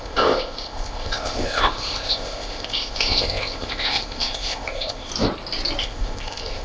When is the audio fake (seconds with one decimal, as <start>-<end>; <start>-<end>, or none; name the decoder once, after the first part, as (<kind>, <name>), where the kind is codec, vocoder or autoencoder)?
0.0-5.1 (codec, ZipCodec); 5.8-6.6